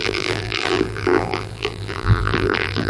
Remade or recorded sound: remade